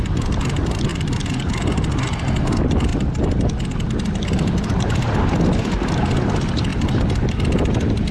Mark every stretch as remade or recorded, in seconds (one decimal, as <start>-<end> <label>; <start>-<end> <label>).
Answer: 0.0-8.1 recorded